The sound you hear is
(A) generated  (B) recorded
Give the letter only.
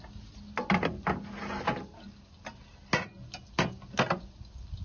B